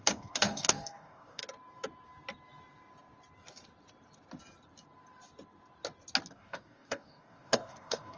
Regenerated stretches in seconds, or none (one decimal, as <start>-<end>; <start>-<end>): 0.0-1.4; 6.3-8.2